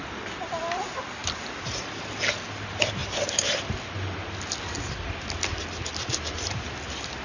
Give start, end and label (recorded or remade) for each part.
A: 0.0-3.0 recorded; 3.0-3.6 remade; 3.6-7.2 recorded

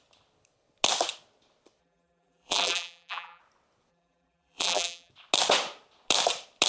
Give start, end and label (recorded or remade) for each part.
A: 0.0-1.8 recorded; 1.8-3.4 remade; 3.4-3.9 recorded; 3.9-5.1 remade; 5.1-6.7 recorded

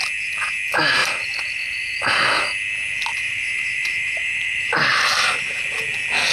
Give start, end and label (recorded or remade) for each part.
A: 0.0-1.0 recorded; 1.0-2.0 remade; 2.0-3.1 recorded; 3.1-5.8 remade; 5.8-6.3 recorded

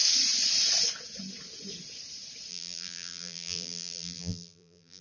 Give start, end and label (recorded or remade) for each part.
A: 0.0-2.5 recorded; 2.5-5.0 remade

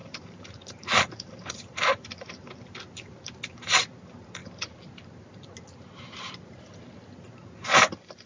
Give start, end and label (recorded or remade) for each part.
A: 0.0-2.5 remade; 2.5-8.3 recorded

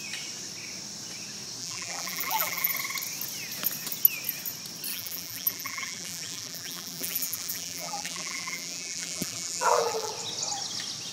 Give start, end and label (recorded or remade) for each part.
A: 0.0-1.6 recorded; 1.6-2.7 remade; 2.7-4.9 recorded; 4.9-10.1 remade; 10.1-11.1 recorded

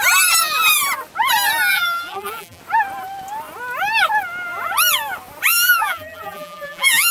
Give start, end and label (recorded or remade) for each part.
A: 0.0-1.7 recorded; 1.7-2.6 remade; 2.6-5.5 recorded; 5.5-7.1 remade